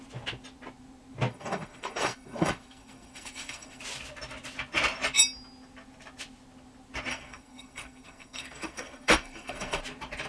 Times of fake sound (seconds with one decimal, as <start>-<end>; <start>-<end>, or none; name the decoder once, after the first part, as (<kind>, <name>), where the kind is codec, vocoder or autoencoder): 1.3-3.8 (codec, SNAC); 7.1-9.8